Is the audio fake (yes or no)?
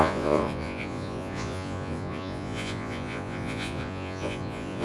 yes